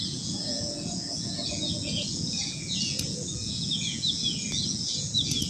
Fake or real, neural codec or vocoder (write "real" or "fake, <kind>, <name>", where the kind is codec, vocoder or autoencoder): fake, vocoder, Vocos